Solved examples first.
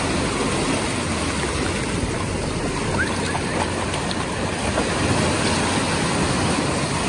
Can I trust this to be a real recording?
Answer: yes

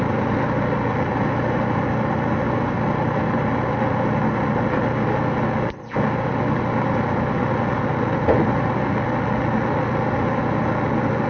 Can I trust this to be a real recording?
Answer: yes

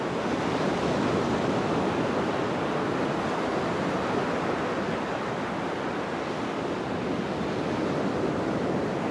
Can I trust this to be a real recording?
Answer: yes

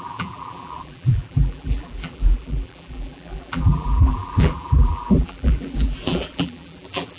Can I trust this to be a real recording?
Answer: no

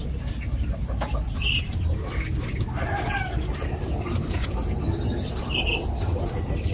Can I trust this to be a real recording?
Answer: yes